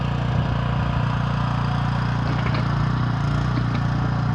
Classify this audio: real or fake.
real